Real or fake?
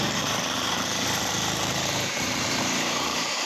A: fake